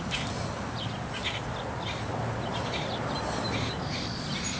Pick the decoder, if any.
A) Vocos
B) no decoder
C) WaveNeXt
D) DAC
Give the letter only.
B